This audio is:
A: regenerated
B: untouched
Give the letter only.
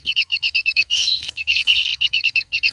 A